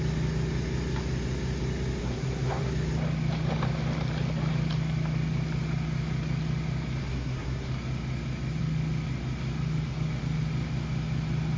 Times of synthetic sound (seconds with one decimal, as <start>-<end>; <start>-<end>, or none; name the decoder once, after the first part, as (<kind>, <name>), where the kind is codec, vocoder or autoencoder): 2.0-2.7 (codec, SNAC); 7.0-7.7